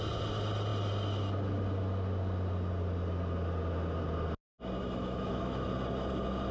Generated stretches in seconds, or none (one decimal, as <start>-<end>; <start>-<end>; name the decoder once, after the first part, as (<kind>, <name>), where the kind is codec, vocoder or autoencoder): 4.8-5.7 (autoencoder, DAC-VAE)